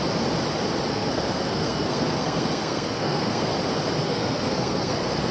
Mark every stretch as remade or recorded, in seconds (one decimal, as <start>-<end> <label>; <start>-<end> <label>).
0.0-0.9 recorded; 0.9-3.5 remade; 3.5-4.0 recorded; 4.0-5.3 remade